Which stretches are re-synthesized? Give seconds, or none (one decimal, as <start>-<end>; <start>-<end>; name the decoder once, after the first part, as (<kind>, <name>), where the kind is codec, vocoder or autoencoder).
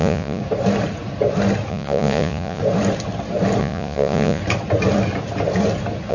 0.0-0.4 (vocoder, Vocos); 1.7-2.6; 3.6-4.4